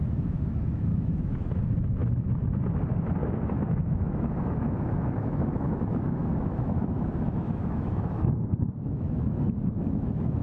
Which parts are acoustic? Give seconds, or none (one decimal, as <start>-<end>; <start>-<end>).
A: 2.0-3.2